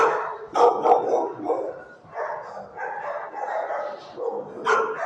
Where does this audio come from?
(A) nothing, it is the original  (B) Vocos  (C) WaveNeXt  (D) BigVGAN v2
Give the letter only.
A